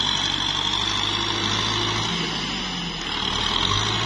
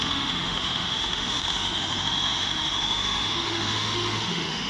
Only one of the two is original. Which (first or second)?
first